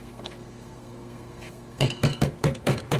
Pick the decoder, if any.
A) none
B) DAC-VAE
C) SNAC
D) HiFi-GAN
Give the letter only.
C